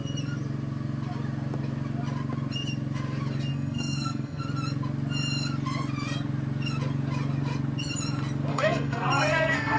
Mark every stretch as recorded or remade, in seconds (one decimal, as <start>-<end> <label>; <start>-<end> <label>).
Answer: 0.0-3.5 recorded; 3.5-4.4 remade; 4.4-8.5 recorded; 8.5-9.8 remade